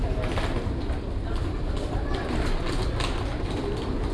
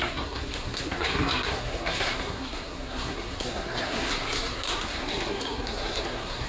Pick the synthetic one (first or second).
second